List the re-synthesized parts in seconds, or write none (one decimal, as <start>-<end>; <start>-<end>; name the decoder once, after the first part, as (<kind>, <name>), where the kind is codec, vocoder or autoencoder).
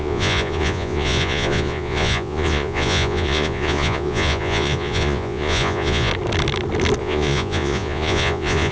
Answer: 0.0-6.1 (vocoder, Vocos); 7.0-8.7